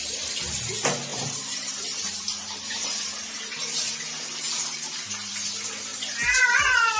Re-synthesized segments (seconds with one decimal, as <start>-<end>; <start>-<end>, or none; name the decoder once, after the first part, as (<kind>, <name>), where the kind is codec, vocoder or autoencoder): 1.1-5.3 (vocoder, BigVGAN v2); 5.9-6.6